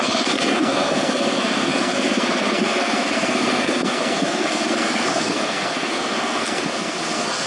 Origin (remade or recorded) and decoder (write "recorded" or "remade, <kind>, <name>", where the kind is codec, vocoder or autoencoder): remade, codec, SNAC